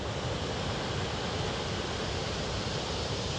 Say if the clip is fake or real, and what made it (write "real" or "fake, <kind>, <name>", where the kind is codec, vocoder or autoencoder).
real